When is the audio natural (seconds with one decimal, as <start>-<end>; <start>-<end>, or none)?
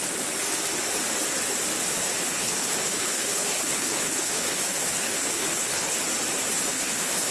0.0-2.0; 6.0-6.7